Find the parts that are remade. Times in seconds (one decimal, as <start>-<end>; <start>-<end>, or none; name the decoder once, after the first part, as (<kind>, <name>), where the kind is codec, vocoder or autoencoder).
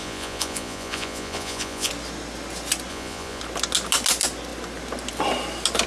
0.0-1.9 (vocoder, Vocos); 2.9-3.4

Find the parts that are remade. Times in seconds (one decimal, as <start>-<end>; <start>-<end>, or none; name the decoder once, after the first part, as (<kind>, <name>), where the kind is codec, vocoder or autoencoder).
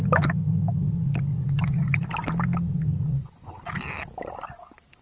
1.3-2.0 (vocoder, Vocos); 3.1-3.6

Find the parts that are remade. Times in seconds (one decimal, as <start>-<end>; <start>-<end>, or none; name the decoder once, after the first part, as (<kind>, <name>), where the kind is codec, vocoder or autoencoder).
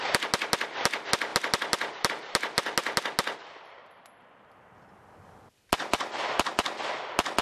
none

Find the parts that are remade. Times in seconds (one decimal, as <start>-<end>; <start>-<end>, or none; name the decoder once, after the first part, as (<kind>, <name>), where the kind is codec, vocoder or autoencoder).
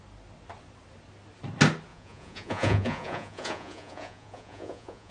1.9-5.1 (vocoder, Vocos)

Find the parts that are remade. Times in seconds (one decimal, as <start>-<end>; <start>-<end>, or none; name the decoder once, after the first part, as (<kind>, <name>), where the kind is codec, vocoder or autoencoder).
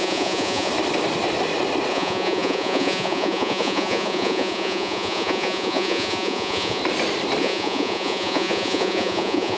0.0-0.7 (vocoder, Vocos); 1.9-6.8; 7.4-9.6